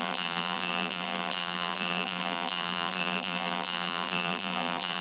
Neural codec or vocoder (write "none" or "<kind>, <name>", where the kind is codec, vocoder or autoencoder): vocoder, BigVGAN v2